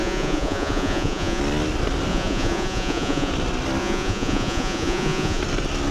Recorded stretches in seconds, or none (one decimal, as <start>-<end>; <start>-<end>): 1.4-2.1; 3.3-3.8; 5.4-5.9